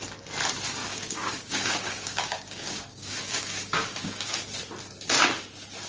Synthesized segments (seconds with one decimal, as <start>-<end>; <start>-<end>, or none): 0.8-4.3